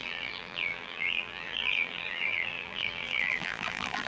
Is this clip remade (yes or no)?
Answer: yes